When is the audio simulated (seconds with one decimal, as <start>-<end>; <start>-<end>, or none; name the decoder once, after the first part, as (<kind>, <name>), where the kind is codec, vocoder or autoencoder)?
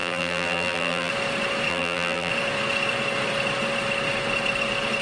0.0-1.1 (vocoder, BigVGAN v2); 1.7-2.3